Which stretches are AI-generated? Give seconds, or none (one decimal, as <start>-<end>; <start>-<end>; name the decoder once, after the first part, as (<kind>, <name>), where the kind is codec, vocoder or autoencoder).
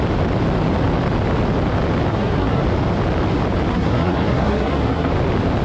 2.1-2.6 (codec, SNAC); 3.7-5.1